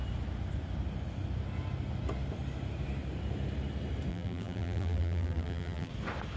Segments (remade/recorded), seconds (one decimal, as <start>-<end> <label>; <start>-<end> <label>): 0.0-4.1 recorded; 4.1-5.9 remade; 5.9-6.4 recorded